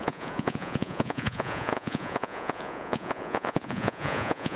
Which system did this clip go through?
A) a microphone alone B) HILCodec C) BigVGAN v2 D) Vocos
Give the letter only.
D